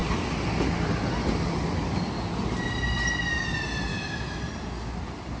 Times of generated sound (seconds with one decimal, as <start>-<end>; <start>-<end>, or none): 3.9-4.4